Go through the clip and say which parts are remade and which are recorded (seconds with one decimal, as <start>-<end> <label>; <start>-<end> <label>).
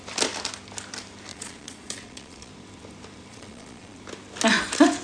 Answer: 0.0-1.3 recorded; 1.3-2.5 remade; 2.5-3.3 recorded; 3.3-4.0 remade; 4.0-5.0 recorded